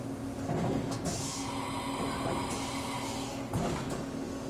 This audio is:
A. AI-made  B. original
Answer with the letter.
B